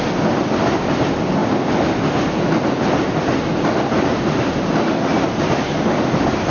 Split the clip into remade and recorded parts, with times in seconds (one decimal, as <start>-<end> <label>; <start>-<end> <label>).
0.0-6.5 recorded